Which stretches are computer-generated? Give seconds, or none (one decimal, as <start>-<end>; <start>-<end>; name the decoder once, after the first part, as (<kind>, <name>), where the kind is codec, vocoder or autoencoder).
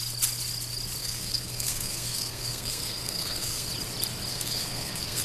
1.0-3.7 (codec, SNAC); 4.3-5.2